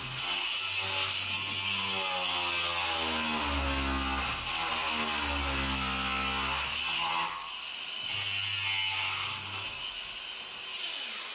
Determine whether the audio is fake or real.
real